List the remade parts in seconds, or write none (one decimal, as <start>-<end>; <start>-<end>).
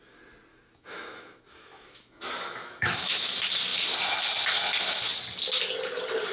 0.5-3.2